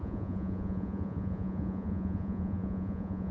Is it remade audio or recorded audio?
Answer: remade